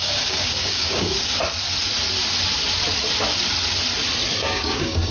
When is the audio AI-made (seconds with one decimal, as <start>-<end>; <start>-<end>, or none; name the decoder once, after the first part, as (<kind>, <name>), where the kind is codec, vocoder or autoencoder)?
0.0-1.3 (codec, DAC); 4.4-5.1